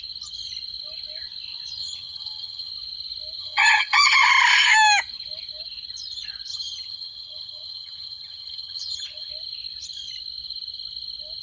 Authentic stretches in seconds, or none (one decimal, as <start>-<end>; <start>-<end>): 0.0-1.8; 2.7-3.4; 4.3-6.5; 9.3-11.4